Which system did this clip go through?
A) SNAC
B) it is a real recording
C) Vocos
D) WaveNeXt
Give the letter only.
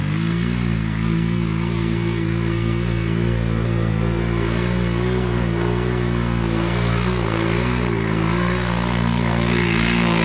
A